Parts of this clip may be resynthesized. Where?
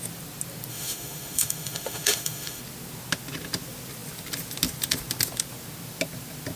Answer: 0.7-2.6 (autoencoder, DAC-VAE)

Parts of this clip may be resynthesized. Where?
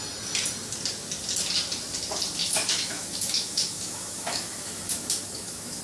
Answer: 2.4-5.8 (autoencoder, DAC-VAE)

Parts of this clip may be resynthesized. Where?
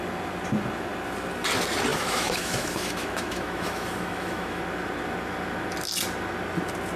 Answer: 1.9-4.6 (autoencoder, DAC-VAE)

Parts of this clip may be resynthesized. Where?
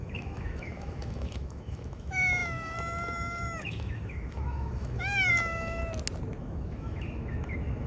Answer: 0.0-5.8 (autoencoder, DAC-VAE); 6.4-7.9